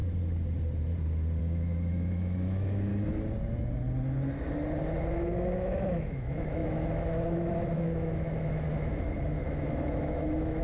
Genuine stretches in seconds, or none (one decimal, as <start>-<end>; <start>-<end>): 0.0-1.4; 2.9-5.1